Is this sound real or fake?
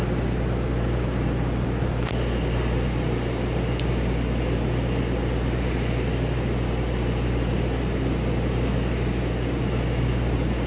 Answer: real